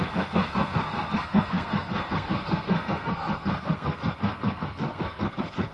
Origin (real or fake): fake